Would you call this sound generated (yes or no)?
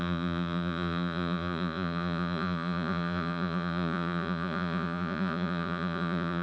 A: yes